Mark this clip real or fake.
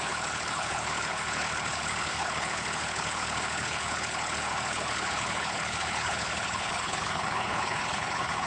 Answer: fake